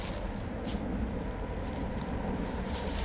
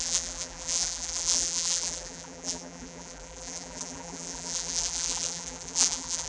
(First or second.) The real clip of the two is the first